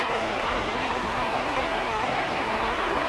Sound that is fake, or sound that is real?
fake